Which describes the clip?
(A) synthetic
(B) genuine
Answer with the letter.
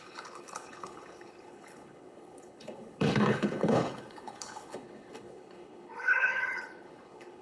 A